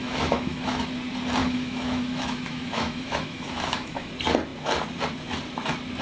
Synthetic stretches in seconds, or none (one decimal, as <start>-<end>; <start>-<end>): 0.0-0.9; 1.4-4.1